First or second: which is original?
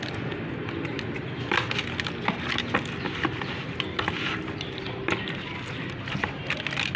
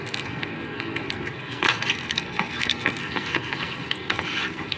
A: first